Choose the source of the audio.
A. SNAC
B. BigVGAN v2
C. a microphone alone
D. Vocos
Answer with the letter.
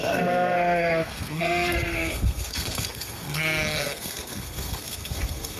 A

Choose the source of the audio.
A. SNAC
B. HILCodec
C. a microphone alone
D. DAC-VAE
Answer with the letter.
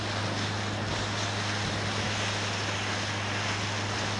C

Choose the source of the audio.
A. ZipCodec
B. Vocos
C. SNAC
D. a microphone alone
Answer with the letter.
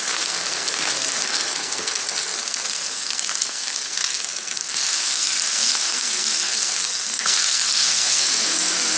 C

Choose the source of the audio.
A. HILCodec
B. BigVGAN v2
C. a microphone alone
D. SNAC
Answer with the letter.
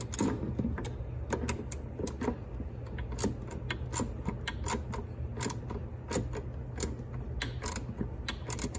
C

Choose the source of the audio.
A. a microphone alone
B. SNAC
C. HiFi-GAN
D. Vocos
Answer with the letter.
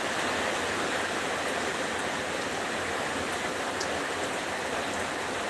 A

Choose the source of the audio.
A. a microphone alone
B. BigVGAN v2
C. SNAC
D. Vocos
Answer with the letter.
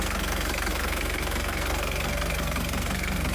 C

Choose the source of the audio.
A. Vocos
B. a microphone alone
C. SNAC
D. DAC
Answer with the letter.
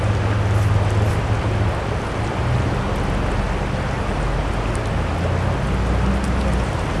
B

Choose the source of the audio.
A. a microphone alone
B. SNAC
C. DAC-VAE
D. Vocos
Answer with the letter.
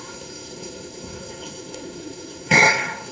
B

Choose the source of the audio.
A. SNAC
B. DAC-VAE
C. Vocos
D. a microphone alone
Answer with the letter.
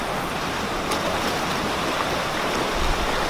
D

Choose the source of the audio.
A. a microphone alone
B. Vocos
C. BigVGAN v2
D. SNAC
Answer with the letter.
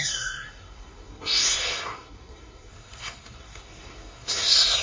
D